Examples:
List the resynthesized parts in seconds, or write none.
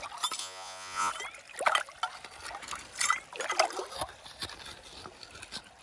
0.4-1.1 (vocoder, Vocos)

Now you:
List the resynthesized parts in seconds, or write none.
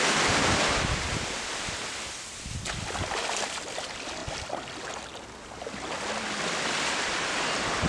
none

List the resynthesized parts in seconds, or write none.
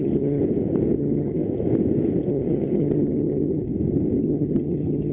0.0-0.4 (vocoder, HiFi-GAN); 1.0-1.4; 2.3-3.6; 4.2-5.1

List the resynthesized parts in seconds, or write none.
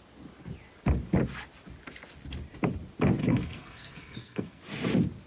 3.2-4.6 (codec, SNAC)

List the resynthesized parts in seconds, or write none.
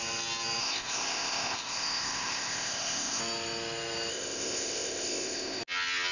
0.6-3.2 (codec, ZipCodec); 4.1-5.6